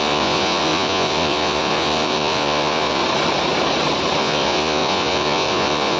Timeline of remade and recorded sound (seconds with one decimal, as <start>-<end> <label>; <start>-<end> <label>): 0.0-3.0 remade; 3.0-4.2 recorded; 4.2-6.0 remade